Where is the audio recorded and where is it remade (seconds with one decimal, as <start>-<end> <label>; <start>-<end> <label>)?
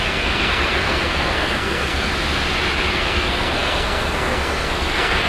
0.0-2.1 remade; 2.1-2.9 recorded; 2.9-5.3 remade